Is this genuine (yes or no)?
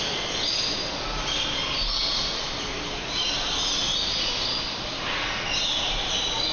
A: yes